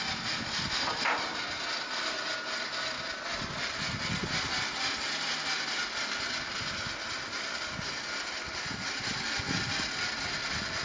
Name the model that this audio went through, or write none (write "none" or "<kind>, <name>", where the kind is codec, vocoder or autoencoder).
none